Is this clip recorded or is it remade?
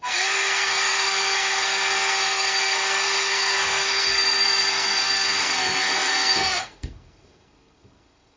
remade